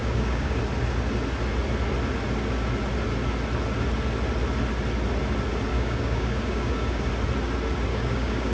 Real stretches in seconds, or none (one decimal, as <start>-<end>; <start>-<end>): 0.6-5.7; 7.1-7.9